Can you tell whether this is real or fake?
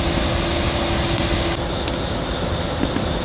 real